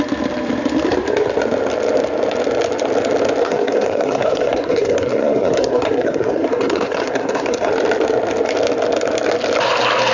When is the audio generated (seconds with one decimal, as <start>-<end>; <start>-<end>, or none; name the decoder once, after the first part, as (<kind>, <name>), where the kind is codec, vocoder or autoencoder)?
3.4-7.7 (codec, SNAC)